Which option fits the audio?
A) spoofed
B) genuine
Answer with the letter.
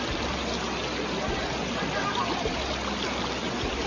B